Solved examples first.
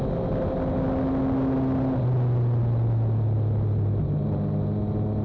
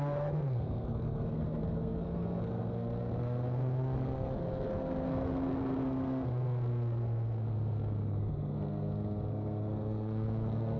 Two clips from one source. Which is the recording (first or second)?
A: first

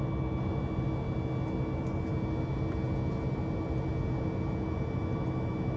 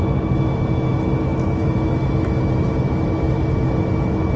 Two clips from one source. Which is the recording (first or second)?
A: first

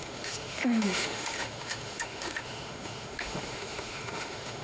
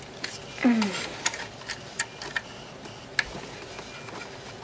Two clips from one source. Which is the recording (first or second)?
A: second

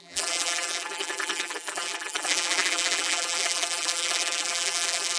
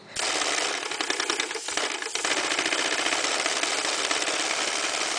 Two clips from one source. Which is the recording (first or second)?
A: second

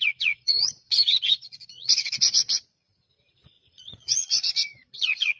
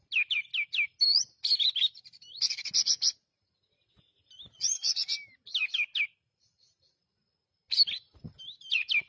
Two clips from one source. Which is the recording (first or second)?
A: second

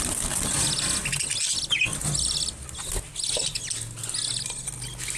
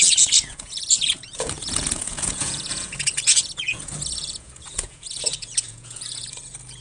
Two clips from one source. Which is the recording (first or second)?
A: first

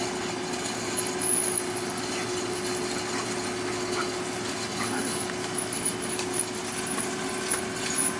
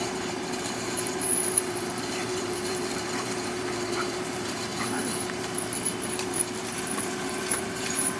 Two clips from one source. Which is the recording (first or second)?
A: first